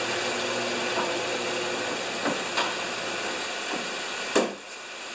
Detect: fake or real real